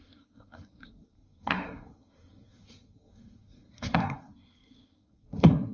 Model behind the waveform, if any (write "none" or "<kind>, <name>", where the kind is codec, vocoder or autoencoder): codec, SNAC